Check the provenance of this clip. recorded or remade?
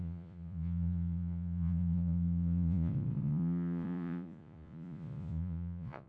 remade